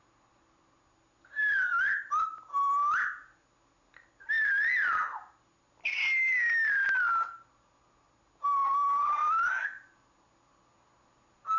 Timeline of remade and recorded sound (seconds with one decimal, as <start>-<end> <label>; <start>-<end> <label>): 0.0-11.6 recorded